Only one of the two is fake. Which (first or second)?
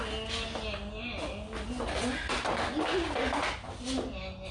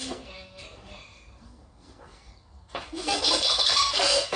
second